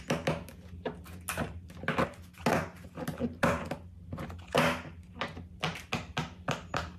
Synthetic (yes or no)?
no